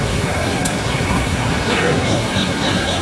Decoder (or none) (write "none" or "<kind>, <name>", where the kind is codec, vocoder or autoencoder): codec, SNAC